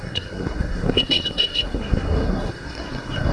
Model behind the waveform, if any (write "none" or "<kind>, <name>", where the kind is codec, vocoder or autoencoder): codec, SNAC